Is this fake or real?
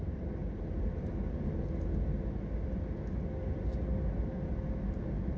real